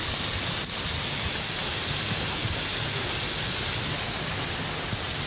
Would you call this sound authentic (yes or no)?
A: yes